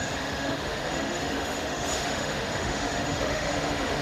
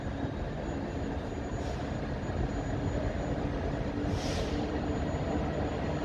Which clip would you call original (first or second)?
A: second